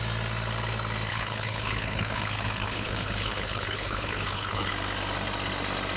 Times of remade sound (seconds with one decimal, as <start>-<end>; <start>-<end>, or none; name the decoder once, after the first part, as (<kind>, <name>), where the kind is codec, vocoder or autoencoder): 1.1-4.7 (codec, HILCodec)